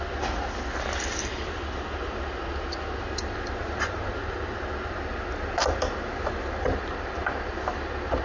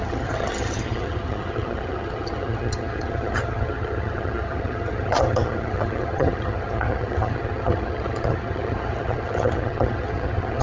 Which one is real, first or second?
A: first